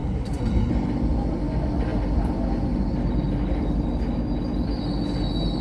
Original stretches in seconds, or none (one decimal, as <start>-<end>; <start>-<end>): 0.7-5.6